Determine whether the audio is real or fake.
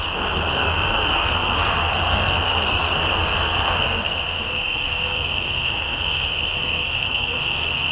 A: fake